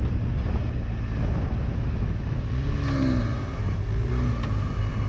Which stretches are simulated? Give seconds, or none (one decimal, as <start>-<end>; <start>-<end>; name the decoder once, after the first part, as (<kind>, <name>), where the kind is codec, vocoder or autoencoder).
1.7-2.5 (autoencoder, DAC-VAE)